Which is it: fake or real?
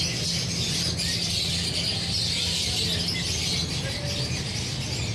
real